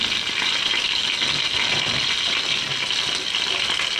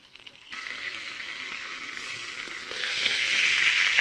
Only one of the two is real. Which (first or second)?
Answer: first